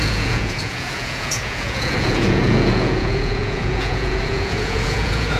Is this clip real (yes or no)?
no